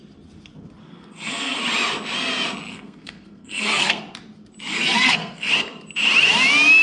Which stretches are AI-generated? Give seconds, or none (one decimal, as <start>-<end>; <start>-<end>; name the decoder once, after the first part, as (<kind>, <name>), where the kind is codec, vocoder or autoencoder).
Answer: 0.8-1.6 (codec, SNAC); 2.7-4.0; 4.7-5.5